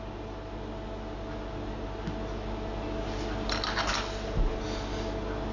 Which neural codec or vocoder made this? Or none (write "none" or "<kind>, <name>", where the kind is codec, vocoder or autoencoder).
none